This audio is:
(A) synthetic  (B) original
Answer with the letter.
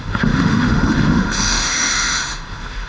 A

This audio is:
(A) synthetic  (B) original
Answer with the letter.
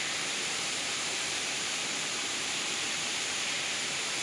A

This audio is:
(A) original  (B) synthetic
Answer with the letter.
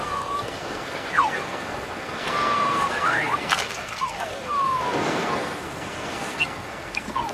B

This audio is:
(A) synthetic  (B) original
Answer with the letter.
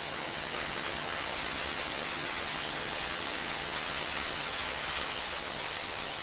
A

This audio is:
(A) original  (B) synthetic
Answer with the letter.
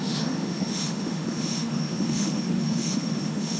B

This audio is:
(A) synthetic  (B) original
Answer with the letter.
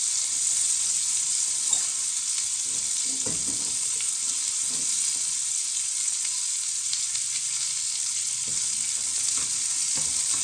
B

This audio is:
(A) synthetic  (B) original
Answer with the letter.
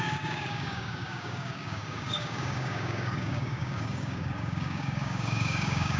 A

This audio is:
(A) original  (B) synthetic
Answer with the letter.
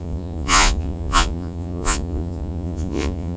B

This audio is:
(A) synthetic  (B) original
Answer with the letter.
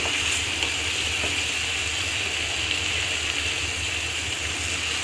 B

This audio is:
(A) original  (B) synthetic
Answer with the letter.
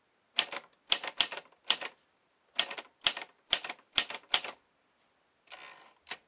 A